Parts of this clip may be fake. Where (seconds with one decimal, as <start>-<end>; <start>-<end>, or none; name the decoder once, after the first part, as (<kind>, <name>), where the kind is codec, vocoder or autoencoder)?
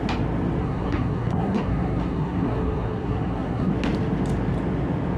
0.6-3.7 (codec, SNAC)